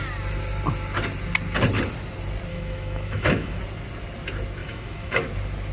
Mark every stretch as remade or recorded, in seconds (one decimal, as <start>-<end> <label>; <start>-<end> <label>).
0.0-2.5 recorded; 2.5-3.6 remade; 3.6-4.6 recorded; 4.6-5.2 remade; 5.2-5.7 recorded